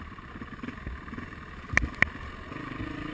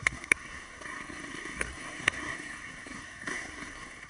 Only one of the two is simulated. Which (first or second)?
second